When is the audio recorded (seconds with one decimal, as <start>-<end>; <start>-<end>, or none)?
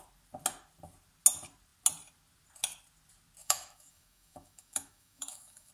0.0-3.4